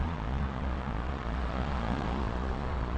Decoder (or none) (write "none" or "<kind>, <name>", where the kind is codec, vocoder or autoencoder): vocoder, Vocos